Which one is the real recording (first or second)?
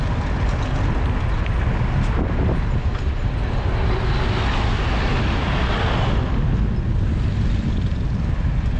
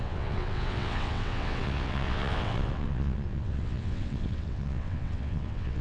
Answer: first